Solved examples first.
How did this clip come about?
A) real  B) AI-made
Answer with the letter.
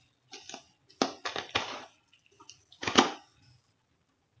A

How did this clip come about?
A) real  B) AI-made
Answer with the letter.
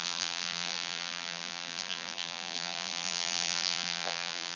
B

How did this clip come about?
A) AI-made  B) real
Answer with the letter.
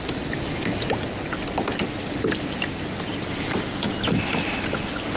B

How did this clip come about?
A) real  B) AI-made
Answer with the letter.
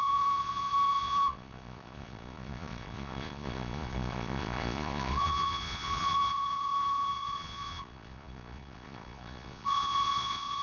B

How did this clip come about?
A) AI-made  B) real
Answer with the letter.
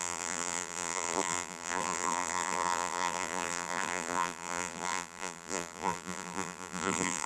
A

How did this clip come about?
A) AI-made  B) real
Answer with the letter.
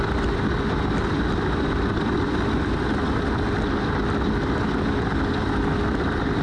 B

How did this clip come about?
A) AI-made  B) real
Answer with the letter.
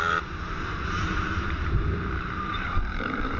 A